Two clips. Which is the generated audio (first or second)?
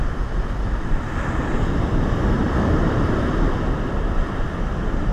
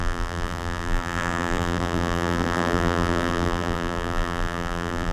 second